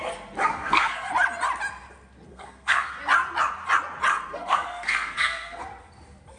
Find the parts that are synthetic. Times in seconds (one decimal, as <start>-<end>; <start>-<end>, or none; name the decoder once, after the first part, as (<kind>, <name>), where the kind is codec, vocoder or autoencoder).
0.5-1.1 (codec, SNAC); 2.3-3.0; 4.1-5.6